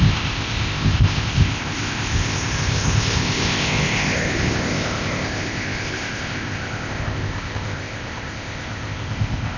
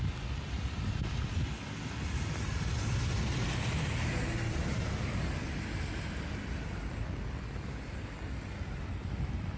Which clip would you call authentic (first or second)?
second